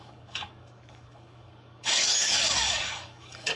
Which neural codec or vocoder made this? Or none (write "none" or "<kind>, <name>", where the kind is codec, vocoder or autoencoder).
codec, DAC